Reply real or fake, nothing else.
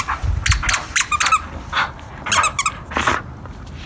real